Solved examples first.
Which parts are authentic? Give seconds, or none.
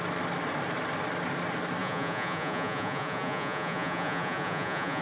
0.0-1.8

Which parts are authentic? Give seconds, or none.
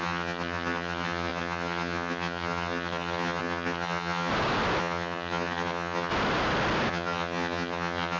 4.3-4.8; 6.1-6.9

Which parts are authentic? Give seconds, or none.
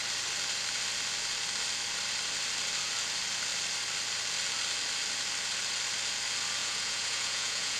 0.0-6.6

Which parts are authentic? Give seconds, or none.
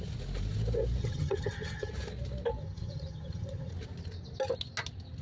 0.0-1.0; 1.9-2.6; 3.7-5.2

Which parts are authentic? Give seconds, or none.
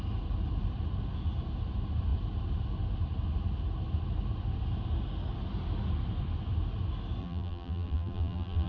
0.0-7.2